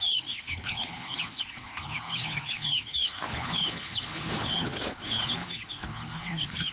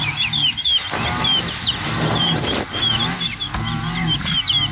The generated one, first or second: first